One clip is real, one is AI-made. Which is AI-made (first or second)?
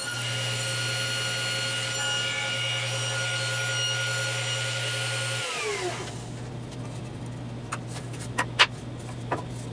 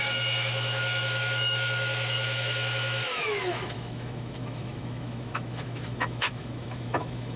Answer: second